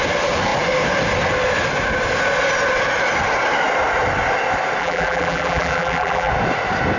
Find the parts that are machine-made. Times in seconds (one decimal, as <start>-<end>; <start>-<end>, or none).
4.8-6.3